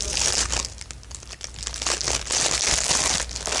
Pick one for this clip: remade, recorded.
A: recorded